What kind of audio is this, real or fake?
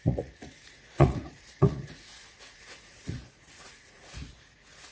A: fake